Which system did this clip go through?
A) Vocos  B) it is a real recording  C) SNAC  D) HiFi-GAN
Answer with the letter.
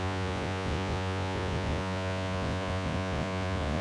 A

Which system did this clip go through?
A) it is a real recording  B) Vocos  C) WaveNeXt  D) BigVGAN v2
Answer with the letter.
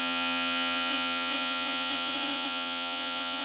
B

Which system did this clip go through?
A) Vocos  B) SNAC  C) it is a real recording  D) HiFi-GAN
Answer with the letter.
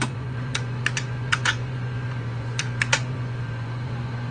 A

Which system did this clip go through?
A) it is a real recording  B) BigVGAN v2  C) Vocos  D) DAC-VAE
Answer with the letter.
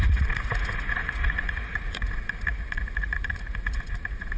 C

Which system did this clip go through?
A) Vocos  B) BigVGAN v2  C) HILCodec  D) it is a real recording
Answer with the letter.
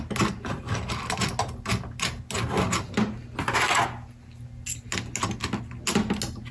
D